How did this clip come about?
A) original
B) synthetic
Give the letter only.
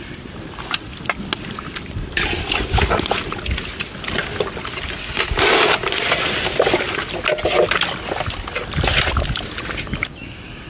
A